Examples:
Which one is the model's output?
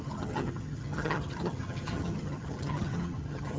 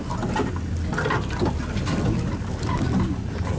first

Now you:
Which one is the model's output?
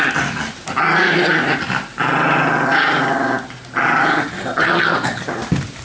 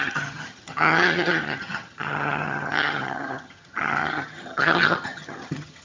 second